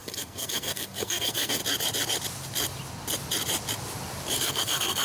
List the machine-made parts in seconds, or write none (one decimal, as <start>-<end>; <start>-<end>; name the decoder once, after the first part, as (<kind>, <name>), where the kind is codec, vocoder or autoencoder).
0.0-1.6 (codec, SNAC); 4.4-5.0